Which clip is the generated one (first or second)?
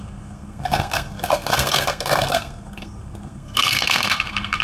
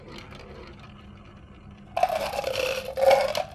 first